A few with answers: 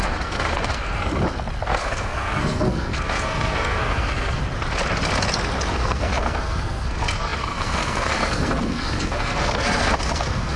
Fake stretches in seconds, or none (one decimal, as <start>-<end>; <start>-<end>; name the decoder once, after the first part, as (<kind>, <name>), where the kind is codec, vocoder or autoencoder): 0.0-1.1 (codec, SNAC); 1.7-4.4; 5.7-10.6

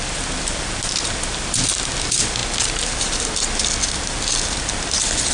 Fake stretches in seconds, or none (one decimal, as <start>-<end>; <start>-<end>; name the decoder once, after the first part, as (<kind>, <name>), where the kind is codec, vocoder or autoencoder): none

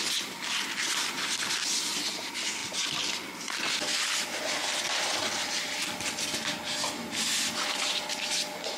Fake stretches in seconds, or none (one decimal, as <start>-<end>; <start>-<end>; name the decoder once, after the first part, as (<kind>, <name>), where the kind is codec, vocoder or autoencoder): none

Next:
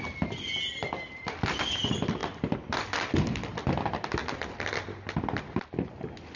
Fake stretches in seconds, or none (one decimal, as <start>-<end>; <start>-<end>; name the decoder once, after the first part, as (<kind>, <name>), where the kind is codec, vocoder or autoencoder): none

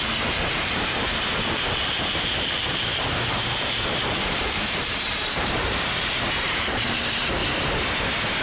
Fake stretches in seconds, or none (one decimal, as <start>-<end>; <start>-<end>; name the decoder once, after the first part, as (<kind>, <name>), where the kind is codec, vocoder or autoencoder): 0.0-7.4 (vocoder, BigVGAN v2)

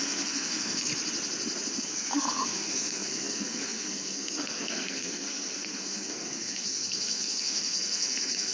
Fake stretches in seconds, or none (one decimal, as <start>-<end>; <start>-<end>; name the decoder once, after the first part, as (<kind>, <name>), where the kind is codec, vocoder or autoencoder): 0.0-0.9 (codec, SNAC); 1.8-8.5

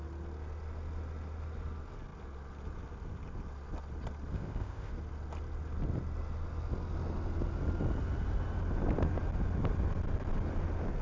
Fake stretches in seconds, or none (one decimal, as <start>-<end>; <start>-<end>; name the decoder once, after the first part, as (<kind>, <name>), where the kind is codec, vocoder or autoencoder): 4.3-4.9 (codec, ZipCodec)